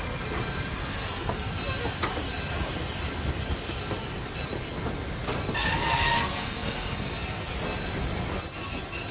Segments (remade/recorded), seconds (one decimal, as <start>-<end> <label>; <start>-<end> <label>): 0.0-0.8 recorded; 0.8-1.5 remade; 1.5-5.6 recorded; 5.6-7.5 remade; 7.5-9.1 recorded